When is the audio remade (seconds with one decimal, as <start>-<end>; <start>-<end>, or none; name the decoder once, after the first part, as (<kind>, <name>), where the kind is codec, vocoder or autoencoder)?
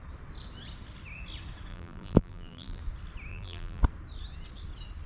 1.7-2.8 (vocoder, BigVGAN v2); 3.3-3.8